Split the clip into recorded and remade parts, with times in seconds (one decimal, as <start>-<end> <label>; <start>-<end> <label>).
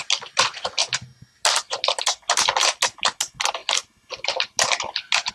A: 0.0-5.3 recorded